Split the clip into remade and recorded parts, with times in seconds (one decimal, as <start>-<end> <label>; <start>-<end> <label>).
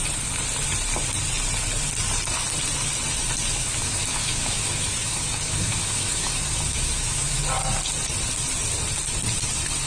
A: 0.0-3.5 recorded; 3.5-7.4 remade; 7.4-9.9 recorded